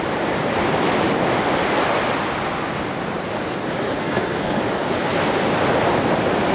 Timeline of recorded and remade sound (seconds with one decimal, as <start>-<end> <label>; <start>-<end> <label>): 0.0-4.0 recorded; 4.0-4.6 remade; 4.6-6.5 recorded